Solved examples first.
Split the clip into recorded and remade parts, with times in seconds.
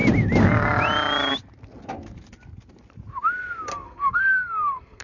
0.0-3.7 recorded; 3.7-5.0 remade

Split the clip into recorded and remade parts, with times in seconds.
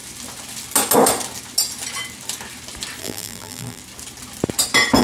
0.0-3.0 recorded; 3.0-3.8 remade; 3.8-5.0 recorded